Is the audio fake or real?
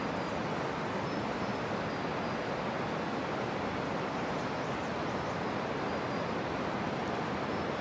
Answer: real